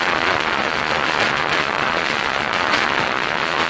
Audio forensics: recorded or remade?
remade